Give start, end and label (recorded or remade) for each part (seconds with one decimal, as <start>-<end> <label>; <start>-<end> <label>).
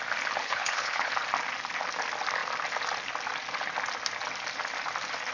0.0-0.4 recorded; 0.4-1.1 remade; 1.1-5.3 recorded